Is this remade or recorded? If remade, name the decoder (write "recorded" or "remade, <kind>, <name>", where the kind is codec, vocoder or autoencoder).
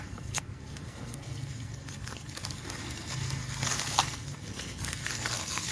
remade, codec, SNAC